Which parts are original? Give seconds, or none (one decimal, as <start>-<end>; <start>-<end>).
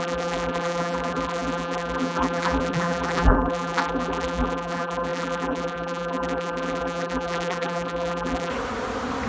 8.5-9.3